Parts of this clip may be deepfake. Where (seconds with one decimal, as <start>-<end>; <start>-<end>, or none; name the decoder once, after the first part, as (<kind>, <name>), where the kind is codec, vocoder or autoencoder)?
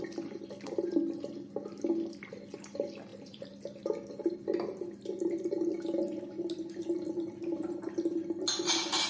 3.1-3.8 (vocoder, BigVGAN v2)